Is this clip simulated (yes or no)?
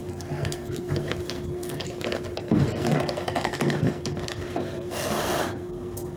yes